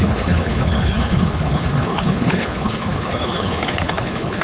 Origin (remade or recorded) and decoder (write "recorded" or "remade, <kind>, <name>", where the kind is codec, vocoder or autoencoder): remade, codec, HILCodec